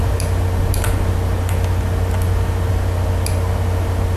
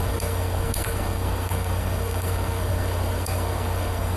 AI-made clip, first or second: second